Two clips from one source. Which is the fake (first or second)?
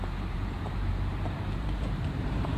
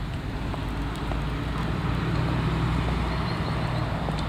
first